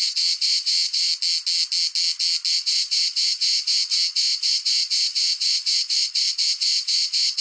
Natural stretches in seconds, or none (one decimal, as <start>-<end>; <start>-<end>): 1.1-2.5